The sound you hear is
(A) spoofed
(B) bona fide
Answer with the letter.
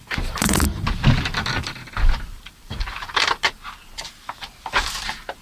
A